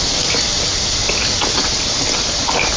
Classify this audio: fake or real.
real